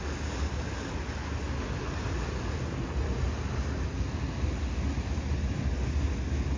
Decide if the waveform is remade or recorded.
recorded